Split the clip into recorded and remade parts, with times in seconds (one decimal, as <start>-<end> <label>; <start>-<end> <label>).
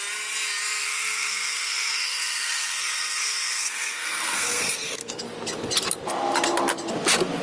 0.0-0.8 recorded; 0.8-5.2 remade; 5.2-7.4 recorded